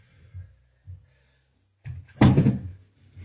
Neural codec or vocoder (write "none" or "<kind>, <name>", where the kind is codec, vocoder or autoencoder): none